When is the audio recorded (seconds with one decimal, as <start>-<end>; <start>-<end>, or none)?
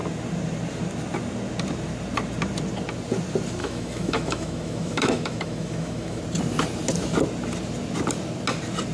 0.0-3.6; 6.2-8.9